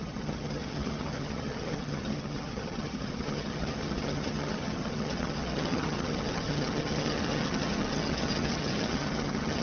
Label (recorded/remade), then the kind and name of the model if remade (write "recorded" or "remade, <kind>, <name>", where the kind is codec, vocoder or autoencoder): remade, vocoder, HiFi-GAN